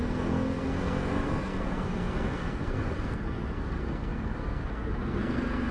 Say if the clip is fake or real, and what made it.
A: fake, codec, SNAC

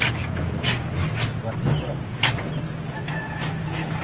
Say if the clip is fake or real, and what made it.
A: real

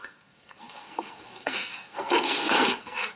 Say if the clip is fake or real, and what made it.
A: fake, codec, SNAC